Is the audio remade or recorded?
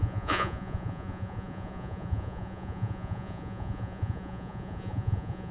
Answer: remade